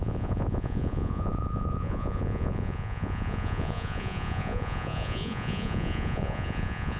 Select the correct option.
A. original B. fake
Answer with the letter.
B